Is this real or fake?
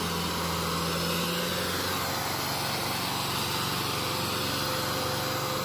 real